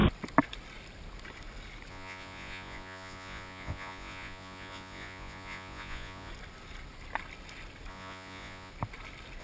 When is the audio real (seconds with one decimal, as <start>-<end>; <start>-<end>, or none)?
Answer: 0.0-1.9; 6.3-7.9; 8.7-9.4